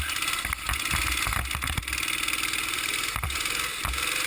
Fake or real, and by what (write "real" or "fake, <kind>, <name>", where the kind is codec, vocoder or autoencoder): real